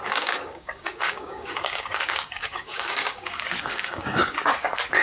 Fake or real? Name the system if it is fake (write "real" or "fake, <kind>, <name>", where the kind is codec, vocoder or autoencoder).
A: fake, codec, DAC